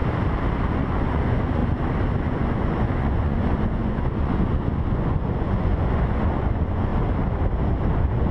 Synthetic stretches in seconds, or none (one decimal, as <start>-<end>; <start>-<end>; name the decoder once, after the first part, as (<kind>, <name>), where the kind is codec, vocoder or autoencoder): 0.7-1.6 (vocoder, Vocos); 2.2-6.9; 7.9-8.3